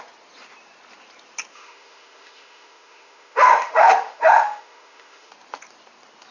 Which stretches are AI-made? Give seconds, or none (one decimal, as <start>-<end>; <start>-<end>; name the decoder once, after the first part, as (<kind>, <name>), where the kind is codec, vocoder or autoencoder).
1.5-5.3 (autoencoder, DAC-VAE)